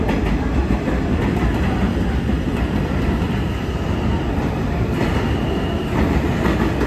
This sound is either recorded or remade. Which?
recorded